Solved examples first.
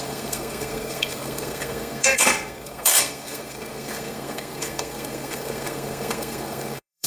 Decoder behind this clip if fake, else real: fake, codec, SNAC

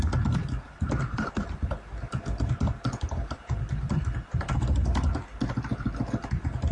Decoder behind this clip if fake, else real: real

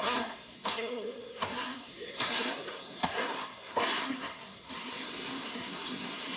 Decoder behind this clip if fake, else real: fake, codec, SNAC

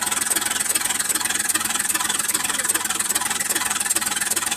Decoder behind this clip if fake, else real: fake, vocoder, BigVGAN v2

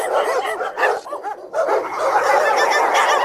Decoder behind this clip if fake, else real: real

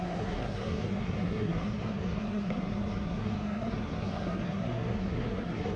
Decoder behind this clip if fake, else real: fake, codec, SNAC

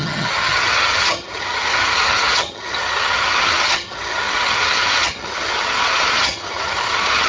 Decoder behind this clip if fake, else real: fake, vocoder, HiFi-GAN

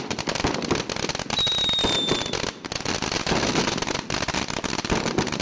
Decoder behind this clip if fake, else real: real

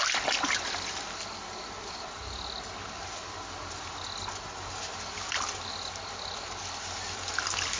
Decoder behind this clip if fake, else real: real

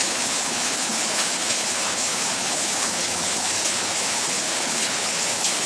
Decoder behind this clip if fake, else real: fake, codec, HILCodec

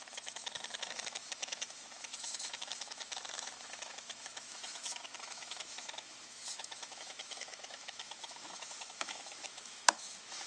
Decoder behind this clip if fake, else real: fake, autoencoder, DAC-VAE